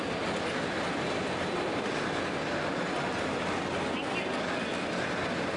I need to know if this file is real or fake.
real